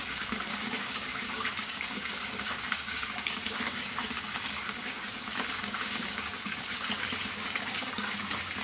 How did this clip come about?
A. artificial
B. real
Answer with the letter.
A